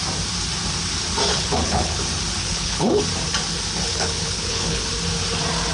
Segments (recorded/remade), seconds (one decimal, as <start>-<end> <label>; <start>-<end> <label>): 0.0-1.3 recorded; 1.3-2.0 remade; 2.0-2.4 recorded; 2.4-3.0 remade; 3.0-3.9 recorded; 3.9-4.9 remade; 4.9-5.7 recorded